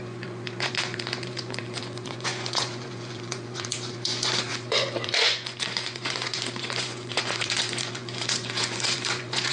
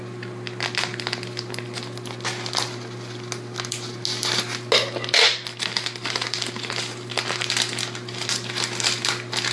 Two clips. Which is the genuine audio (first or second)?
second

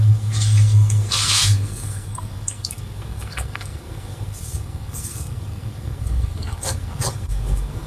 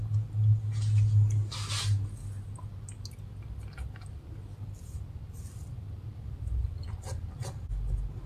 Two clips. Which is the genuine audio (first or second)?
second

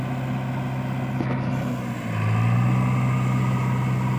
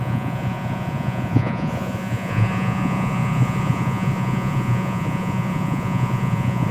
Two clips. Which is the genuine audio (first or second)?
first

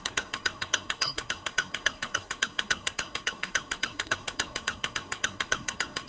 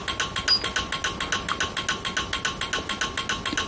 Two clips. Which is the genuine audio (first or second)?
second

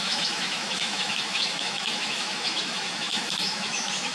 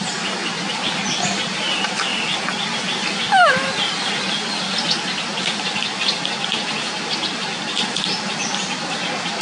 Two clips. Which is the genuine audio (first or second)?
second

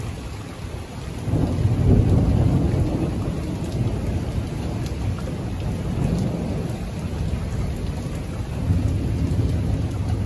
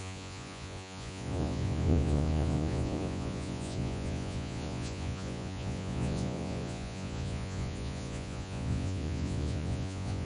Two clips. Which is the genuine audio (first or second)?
first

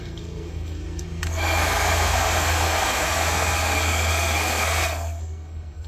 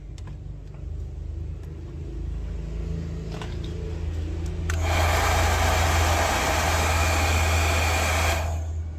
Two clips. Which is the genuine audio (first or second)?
second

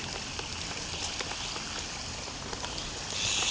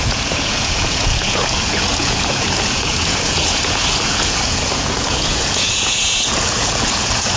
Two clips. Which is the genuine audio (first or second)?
first